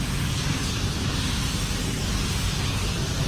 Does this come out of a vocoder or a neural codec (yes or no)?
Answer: no